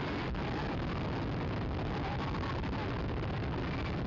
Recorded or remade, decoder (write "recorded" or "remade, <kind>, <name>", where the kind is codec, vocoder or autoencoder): recorded